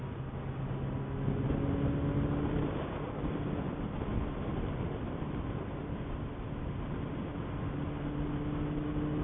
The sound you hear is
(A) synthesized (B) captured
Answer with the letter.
B